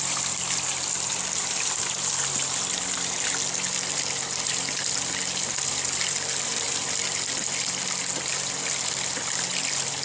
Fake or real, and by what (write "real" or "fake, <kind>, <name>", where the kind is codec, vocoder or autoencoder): real